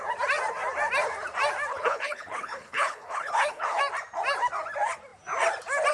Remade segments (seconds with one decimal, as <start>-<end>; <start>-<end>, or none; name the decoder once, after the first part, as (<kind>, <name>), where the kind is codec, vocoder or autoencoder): 1.7-3.8 (codec, HILCodec)